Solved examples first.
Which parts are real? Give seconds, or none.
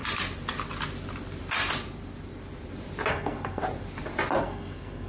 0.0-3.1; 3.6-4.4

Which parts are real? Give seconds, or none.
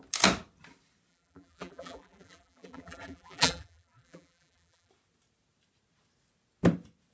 0.0-1.1; 4.9-7.1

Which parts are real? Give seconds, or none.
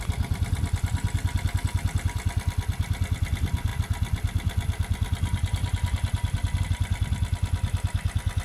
0.0-8.4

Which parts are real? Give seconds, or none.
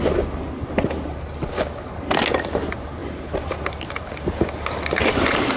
0.0-5.6